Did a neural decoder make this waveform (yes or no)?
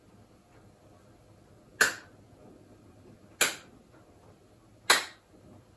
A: no